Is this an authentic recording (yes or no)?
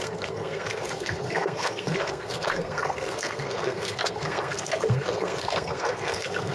no